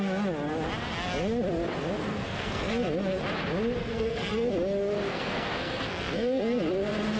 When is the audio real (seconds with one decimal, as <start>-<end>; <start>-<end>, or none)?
0.0-2.0; 2.7-3.8; 4.5-5.1; 6.4-7.2